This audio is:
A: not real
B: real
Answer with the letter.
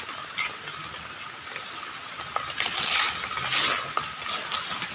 B